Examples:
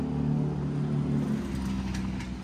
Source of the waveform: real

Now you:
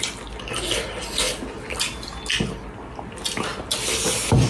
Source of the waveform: real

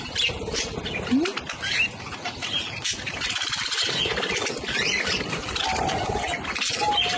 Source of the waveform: real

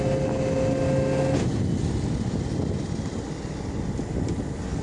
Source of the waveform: real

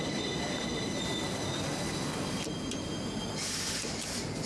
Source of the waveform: real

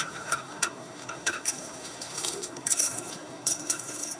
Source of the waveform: fake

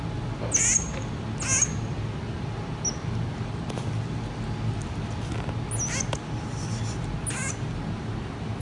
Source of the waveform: real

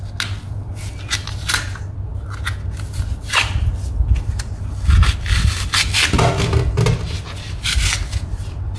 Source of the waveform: real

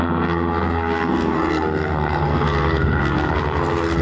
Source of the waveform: fake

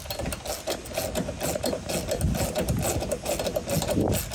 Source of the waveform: real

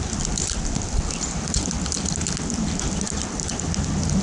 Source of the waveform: real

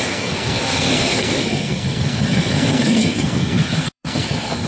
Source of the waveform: fake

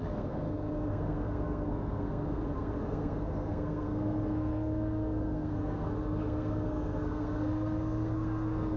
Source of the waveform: fake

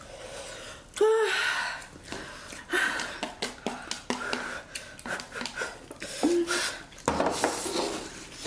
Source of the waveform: real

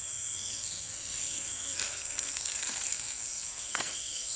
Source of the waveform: fake